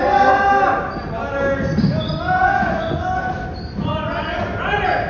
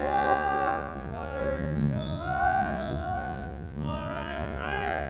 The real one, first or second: first